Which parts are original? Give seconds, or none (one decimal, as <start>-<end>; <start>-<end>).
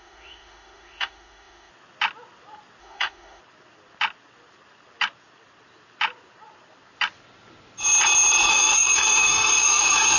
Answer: 1.7-2.8; 3.4-8.5